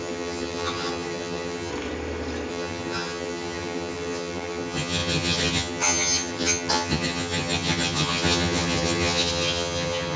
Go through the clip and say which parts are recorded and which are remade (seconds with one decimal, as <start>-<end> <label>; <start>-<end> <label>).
0.0-1.7 remade; 1.7-2.5 recorded; 2.5-10.2 remade